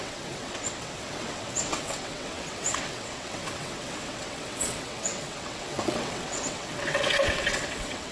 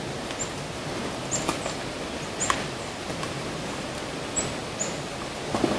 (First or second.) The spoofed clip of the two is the first